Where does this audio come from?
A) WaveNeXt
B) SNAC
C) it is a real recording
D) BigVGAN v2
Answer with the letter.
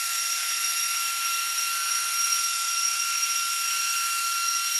B